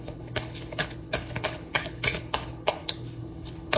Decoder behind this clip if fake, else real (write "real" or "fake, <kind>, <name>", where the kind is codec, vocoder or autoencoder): fake, codec, HILCodec